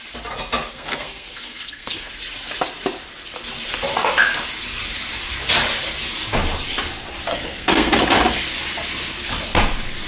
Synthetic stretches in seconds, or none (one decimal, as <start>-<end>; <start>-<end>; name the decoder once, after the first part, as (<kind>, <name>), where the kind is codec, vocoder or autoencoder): 0.7-2.1 (codec, SNAC); 7.3-8.0